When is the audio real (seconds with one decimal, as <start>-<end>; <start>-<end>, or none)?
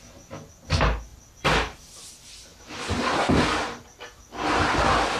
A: 0.0-1.1; 1.9-5.2